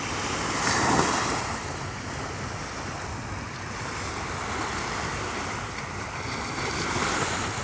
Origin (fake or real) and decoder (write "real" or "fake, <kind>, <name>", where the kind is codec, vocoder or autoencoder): real